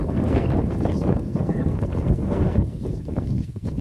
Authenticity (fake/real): fake